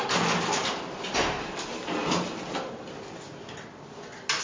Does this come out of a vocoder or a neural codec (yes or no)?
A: no